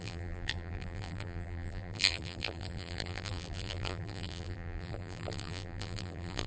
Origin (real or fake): fake